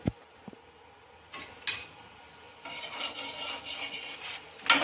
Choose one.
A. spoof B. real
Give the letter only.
B